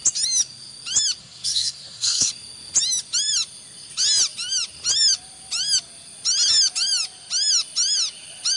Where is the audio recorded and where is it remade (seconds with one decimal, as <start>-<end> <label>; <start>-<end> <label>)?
0.0-1.2 recorded; 1.2-2.3 remade; 2.3-8.6 recorded